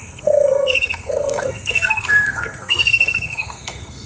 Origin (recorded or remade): remade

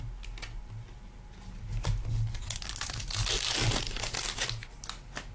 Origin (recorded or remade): recorded